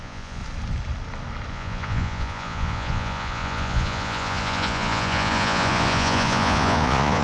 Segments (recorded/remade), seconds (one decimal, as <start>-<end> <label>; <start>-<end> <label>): 0.0-0.4 remade; 0.4-1.5 recorded; 1.5-7.2 remade